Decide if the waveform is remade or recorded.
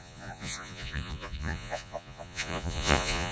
remade